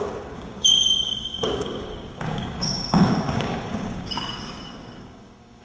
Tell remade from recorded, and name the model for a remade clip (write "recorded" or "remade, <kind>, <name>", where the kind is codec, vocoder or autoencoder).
remade, codec, DAC